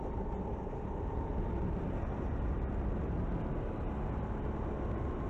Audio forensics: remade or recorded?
recorded